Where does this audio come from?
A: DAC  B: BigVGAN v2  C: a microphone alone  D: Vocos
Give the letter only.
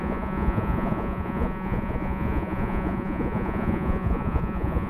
D